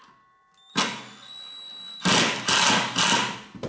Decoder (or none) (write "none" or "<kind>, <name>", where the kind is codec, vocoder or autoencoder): none